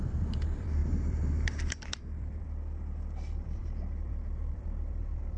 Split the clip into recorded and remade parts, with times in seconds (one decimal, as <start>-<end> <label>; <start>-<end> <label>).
0.0-5.4 remade